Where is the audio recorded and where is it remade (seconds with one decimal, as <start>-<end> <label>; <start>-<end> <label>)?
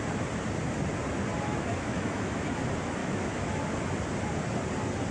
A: 0.0-1.5 recorded; 1.5-2.5 remade; 2.5-3.0 recorded; 3.0-3.6 remade; 3.6-5.1 recorded